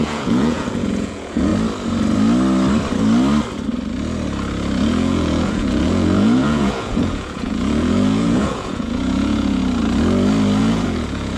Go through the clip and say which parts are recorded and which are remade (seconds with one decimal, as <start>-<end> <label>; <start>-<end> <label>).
0.0-1.5 remade; 1.5-4.8 recorded; 4.8-9.6 remade; 9.6-10.6 recorded; 10.6-11.4 remade